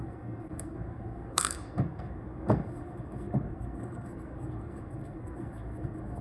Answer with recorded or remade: remade